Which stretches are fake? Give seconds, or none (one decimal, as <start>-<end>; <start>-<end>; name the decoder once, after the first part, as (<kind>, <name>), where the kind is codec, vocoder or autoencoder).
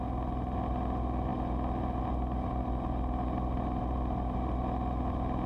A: none